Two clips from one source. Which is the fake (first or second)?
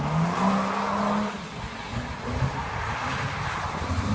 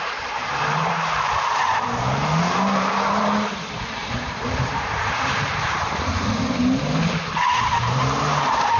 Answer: second